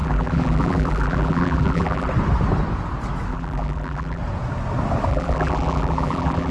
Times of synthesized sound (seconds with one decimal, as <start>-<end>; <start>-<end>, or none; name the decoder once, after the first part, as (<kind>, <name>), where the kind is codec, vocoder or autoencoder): 0.0-2.1 (vocoder, BigVGAN v2); 3.3-4.2; 5.1-6.5